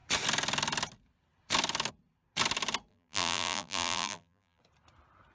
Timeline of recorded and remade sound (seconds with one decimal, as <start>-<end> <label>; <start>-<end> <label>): 0.0-2.9 recorded; 2.9-4.6 remade; 4.6-5.3 recorded